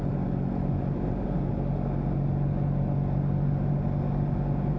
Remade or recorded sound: recorded